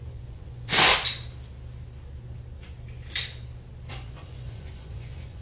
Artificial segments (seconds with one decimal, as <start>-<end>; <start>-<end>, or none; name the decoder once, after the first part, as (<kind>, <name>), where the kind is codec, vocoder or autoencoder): 0.0-0.9 (vocoder, Vocos); 3.9-5.4